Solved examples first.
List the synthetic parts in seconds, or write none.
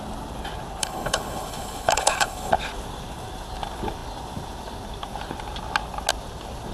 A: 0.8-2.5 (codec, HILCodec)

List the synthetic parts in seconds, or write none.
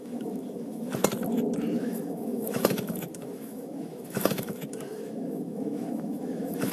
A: 0.0-0.9 (autoencoder, DAC-VAE); 1.8-6.7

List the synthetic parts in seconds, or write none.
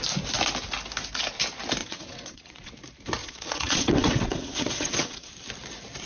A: 1.8-2.7 (vocoder, WaveNeXt); 3.2-5.3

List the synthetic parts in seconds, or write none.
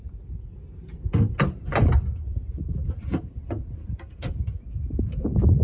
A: 0.5-1.0 (vocoder, BigVGAN v2)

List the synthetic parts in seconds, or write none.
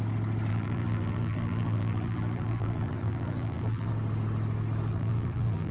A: 0.5-3.9 (vocoder, BigVGAN v2); 4.9-5.7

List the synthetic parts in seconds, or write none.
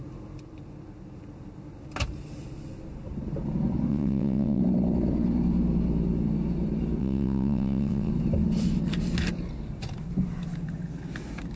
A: 3.9-4.6 (vocoder, WaveNeXt); 7.0-8.1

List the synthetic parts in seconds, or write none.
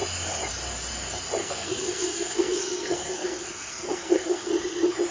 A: 1.4-4.5 (codec, SNAC)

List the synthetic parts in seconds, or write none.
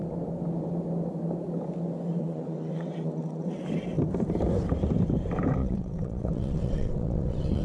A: 2.2-3.6 (vocoder, WaveNeXt); 5.6-7.6